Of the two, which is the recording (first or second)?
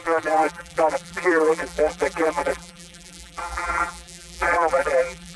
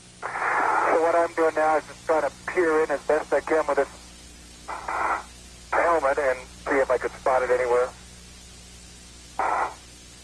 second